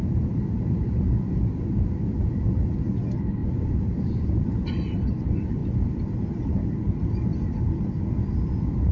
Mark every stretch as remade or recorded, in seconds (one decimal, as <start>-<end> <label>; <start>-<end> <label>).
0.0-3.4 recorded; 3.4-5.0 remade; 5.0-8.9 recorded